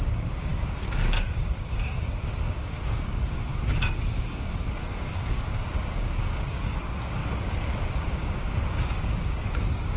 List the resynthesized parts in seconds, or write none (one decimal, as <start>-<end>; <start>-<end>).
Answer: 0.0-7.2; 7.9-10.0